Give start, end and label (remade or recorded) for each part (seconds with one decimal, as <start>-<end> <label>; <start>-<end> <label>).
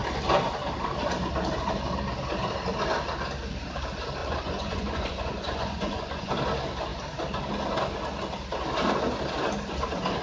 0.0-4.2 recorded; 4.2-6.3 remade; 6.3-10.2 recorded